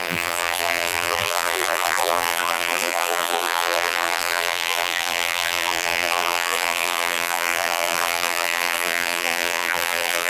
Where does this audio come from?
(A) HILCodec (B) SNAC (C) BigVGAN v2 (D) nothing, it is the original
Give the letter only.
C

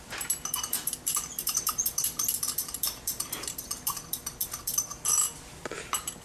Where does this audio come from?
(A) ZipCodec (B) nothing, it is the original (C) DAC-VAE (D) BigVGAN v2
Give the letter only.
D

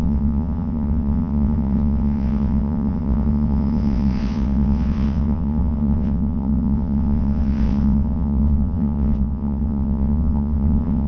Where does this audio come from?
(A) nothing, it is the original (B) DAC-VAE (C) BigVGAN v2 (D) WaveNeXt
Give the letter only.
D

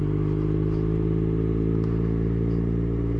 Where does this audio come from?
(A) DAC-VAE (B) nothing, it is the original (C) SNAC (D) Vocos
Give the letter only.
B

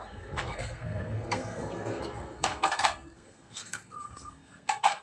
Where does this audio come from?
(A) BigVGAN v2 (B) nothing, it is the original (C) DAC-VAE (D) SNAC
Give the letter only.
D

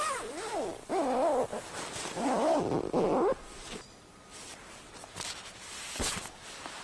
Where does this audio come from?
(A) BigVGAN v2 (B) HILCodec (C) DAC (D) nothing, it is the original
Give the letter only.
D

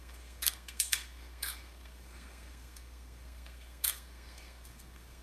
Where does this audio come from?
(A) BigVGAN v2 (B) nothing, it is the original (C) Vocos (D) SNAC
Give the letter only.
D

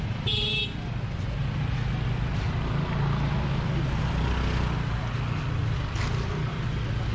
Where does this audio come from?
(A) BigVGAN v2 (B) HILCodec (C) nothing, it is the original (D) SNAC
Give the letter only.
C